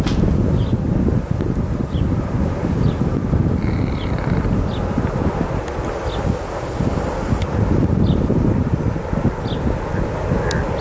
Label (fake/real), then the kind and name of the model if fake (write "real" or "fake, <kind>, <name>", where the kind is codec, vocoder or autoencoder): real